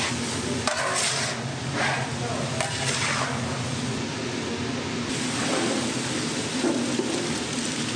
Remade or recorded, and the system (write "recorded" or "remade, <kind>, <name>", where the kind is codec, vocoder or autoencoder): recorded